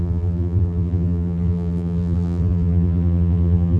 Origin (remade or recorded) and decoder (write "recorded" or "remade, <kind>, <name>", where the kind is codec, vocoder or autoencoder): remade, vocoder, BigVGAN v2